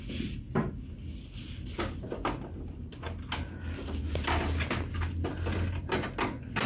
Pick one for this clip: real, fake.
real